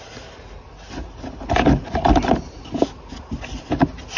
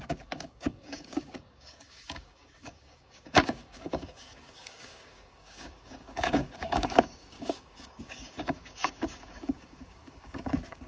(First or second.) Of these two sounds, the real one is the first